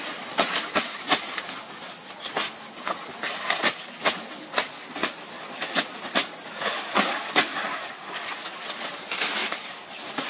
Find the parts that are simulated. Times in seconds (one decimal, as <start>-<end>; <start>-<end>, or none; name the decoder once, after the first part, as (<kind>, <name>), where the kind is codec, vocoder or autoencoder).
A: 5.0-5.8 (vocoder, BigVGAN v2); 9.4-10.3